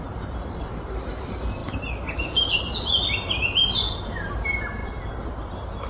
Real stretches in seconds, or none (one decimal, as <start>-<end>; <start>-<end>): 0.0-5.9

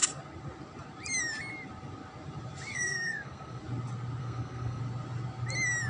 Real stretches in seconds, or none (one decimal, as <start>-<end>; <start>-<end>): 0.0-2.7; 3.6-4.2; 4.8-5.9